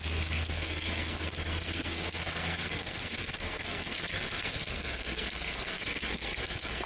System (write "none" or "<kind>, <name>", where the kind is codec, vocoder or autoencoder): codec, SNAC